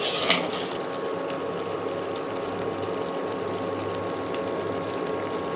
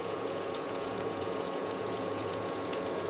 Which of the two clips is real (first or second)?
first